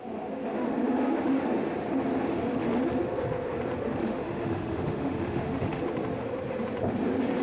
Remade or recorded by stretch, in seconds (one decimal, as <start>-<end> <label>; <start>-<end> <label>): 0.0-4.0 recorded; 4.0-5.8 remade; 5.8-7.4 recorded